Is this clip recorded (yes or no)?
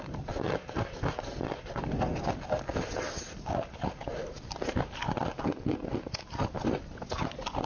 yes